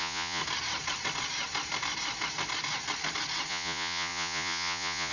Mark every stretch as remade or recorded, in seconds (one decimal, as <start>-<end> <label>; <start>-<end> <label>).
0.0-0.4 remade; 0.4-3.5 recorded; 3.5-5.1 remade